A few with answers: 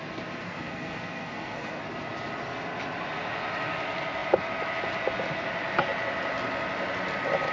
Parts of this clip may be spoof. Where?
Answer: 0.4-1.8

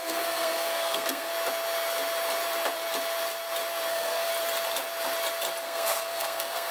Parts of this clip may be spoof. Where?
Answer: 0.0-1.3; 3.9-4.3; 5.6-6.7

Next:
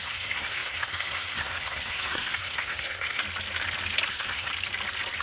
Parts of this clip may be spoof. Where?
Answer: 0.0-3.2; 4.1-4.5